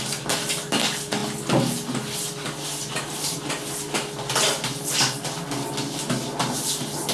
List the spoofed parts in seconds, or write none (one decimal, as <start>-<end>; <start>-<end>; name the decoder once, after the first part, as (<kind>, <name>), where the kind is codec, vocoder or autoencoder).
none